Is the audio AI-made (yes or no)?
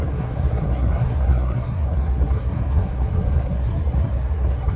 yes